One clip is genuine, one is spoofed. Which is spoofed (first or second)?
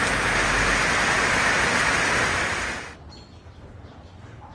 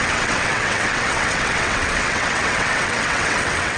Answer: second